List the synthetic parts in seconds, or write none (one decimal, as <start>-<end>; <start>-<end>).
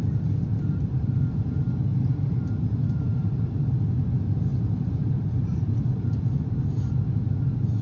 0.5-1.2; 1.9-3.7; 4.5-6.2